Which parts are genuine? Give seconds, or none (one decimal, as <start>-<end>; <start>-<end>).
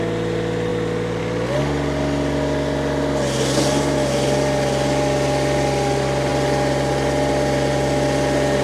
0.0-8.6